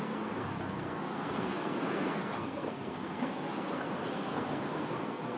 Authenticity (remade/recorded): remade